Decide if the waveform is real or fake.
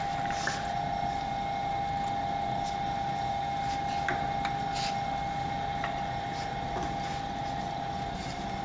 real